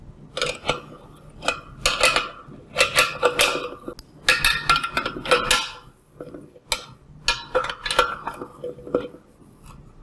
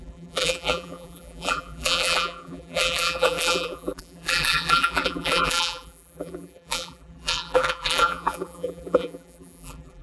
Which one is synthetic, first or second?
second